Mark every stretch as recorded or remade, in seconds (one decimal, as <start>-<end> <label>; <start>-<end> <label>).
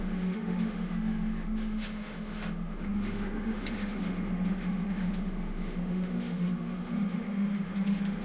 0.0-8.2 remade